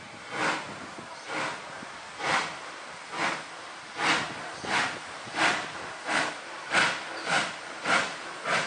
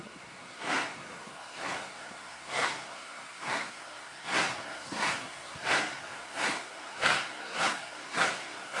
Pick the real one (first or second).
first